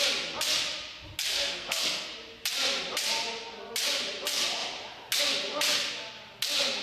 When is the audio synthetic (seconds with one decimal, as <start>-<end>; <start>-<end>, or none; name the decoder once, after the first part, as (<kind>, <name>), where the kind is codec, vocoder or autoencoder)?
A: 1.3-2.1 (codec, SNAC)